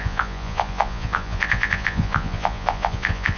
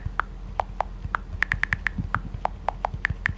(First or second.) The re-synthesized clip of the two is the first